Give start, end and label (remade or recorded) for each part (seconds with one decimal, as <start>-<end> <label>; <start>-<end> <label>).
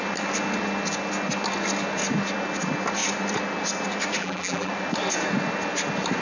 0.0-4.2 recorded; 4.2-4.7 remade; 4.7-6.2 recorded